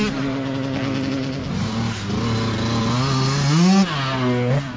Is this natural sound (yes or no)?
yes